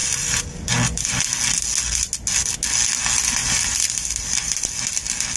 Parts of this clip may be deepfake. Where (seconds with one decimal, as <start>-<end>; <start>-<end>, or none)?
0.0-1.2; 3.4-4.9